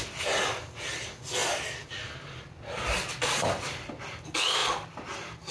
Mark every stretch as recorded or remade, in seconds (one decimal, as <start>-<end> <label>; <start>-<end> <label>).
0.0-1.4 recorded; 1.4-3.9 remade; 3.9-4.6 recorded; 4.6-5.5 remade